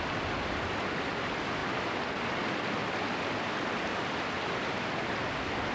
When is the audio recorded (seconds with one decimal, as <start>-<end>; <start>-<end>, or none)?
0.0-5.7